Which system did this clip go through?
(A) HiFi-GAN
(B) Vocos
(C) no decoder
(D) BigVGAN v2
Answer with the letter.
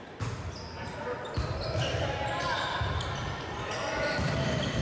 D